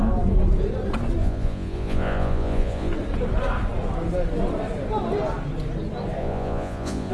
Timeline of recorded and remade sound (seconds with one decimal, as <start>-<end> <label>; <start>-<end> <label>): 0.0-1.2 recorded; 1.2-2.9 remade; 2.9-6.2 recorded; 6.2-7.1 remade